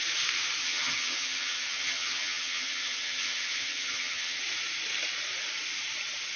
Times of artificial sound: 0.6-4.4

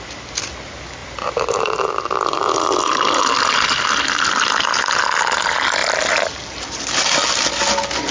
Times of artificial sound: none

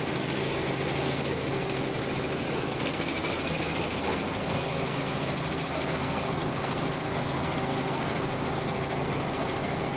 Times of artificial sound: 0.0-1.9; 2.5-10.0

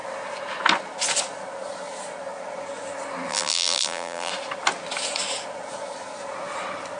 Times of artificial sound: 3.3-4.3

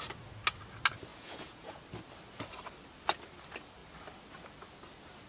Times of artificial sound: 1.1-1.8

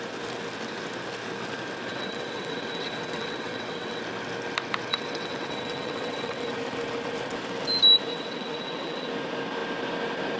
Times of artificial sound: 1.9-4.0; 4.9-6.5; 8.1-9.1

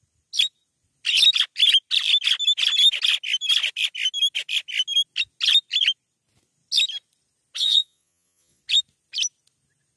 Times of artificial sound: 7.6-8.6

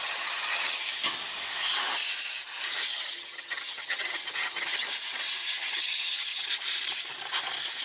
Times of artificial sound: 0.0-0.8; 2.9-4.9; 5.4-6.5